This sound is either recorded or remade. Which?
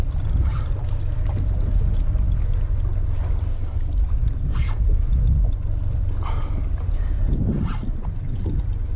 recorded